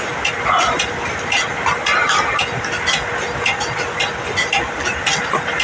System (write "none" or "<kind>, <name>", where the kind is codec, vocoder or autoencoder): none